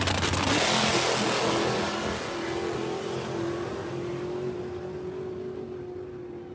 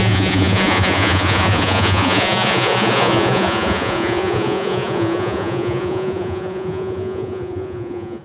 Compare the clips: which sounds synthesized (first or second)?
second